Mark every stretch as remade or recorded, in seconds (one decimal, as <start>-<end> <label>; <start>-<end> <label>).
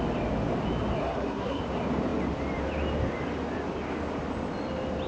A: 0.0-1.0 recorded; 1.0-1.6 remade; 1.6-5.1 recorded